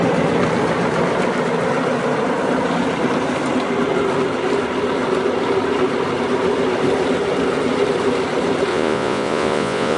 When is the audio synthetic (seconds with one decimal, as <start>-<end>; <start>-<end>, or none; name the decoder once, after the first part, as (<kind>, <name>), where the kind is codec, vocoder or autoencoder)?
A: 8.7-10.0 (vocoder, Vocos)